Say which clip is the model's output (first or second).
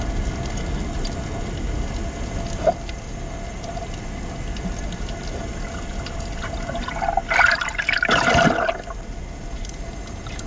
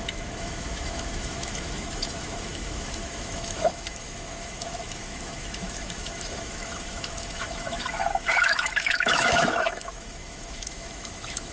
second